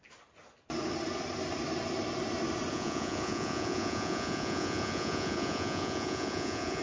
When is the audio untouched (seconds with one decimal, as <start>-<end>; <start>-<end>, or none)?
0.0-2.7